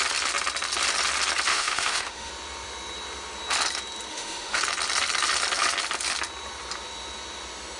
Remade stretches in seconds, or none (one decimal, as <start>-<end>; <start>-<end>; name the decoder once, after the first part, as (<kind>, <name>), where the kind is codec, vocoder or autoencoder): 1.5-2.3 (autoencoder, DAC-VAE); 4.1-4.6